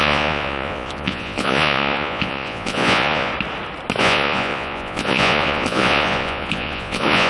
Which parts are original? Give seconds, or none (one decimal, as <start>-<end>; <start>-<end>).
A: 3.3-4.0